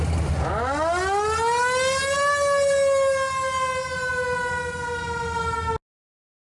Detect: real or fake real